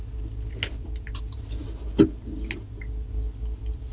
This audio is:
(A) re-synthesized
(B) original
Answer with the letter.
B